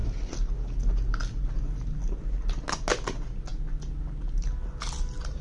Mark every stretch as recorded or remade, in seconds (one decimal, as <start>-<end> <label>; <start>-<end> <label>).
0.0-5.4 recorded